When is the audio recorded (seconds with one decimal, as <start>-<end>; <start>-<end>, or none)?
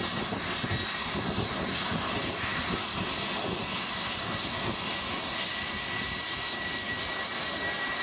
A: 0.0-8.0